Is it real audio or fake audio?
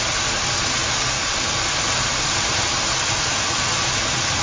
real